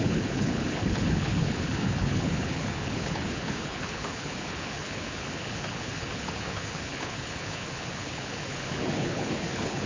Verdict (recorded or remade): remade